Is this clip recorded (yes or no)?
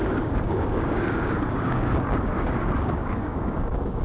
no